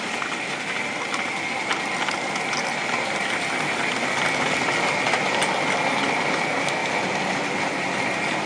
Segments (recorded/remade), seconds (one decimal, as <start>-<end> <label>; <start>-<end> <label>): 0.0-8.5 recorded